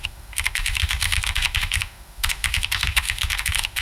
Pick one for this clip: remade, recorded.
remade